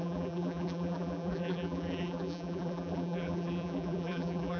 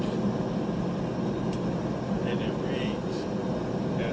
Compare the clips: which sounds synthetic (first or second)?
first